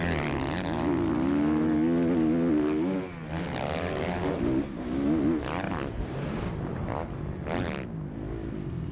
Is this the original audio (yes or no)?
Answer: yes